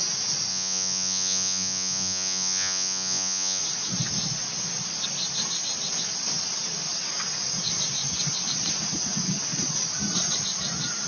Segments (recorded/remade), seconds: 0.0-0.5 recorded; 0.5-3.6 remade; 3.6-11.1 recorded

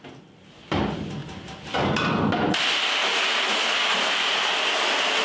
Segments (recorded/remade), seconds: 0.0-5.2 recorded

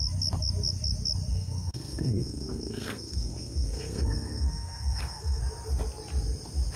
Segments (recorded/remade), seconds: 0.0-1.3 recorded; 1.3-5.4 remade; 5.4-6.8 recorded

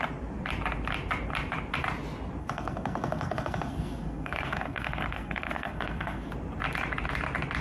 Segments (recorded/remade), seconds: 0.0-2.4 recorded; 2.4-6.3 remade; 6.3-7.6 recorded